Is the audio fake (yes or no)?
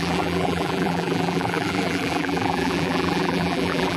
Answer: yes